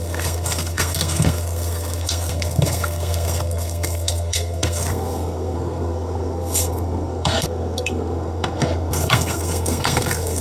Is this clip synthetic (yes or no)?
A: yes